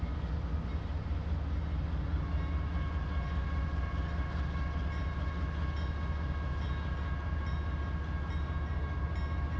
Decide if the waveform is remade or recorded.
recorded